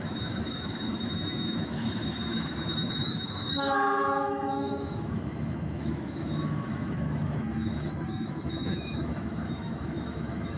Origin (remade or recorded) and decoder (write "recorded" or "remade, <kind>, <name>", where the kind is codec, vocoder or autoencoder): remade, autoencoder, DAC-VAE